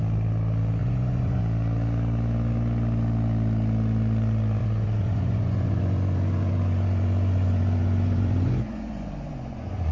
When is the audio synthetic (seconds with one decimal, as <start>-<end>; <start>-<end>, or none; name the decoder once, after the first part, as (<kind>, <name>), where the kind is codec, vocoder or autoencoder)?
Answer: 0.8-1.4 (vocoder, Vocos); 4.6-9.9